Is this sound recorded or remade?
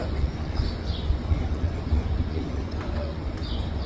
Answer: remade